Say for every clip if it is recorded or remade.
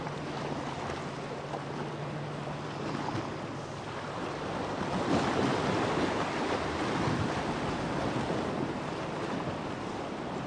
recorded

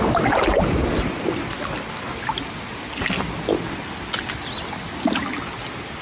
recorded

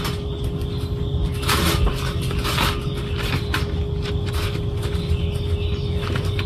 recorded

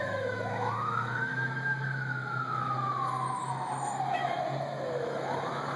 remade